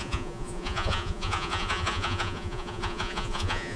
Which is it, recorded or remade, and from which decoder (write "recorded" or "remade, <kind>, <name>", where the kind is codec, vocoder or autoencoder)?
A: remade, vocoder, Vocos